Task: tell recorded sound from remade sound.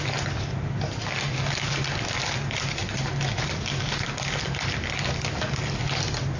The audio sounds recorded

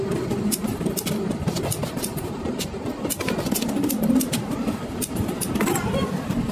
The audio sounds recorded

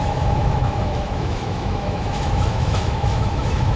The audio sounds remade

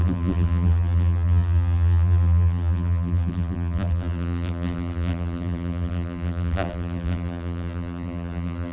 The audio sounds remade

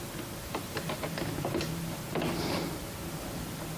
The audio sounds recorded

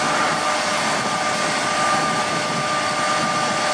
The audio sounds recorded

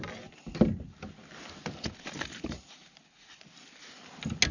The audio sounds recorded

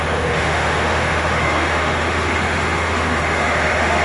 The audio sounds remade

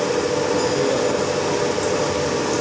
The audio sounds recorded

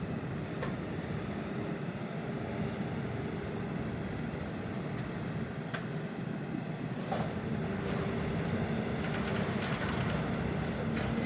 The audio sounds recorded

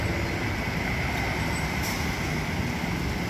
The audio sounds recorded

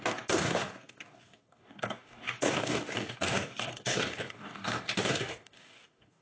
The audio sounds remade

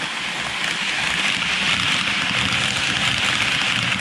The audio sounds recorded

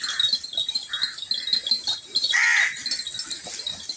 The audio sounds recorded